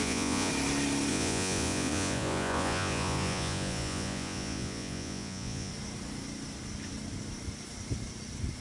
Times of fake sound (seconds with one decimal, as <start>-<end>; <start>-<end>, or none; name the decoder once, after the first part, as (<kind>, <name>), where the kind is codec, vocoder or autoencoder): 0.0-0.5 (vocoder, Vocos); 1.1-5.7